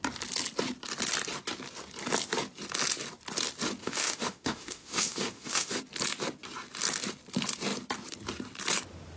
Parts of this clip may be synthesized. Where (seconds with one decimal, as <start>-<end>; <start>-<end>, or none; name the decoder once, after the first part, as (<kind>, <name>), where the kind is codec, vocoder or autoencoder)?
3.8-5.8 (autoencoder, DAC-VAE)